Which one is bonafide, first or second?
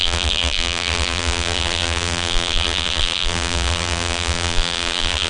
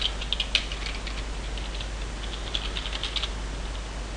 second